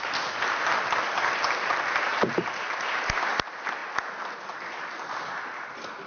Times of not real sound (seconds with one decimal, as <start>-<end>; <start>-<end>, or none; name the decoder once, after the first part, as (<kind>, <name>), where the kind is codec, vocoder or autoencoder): none